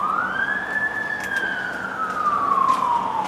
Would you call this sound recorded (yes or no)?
yes